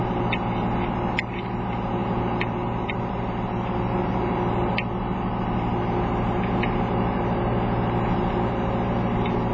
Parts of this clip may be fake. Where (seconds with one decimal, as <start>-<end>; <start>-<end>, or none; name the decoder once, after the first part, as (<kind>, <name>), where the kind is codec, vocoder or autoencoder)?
none